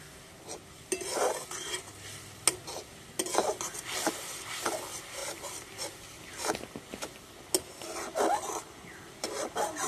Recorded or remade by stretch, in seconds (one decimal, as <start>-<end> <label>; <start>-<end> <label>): 0.0-9.9 recorded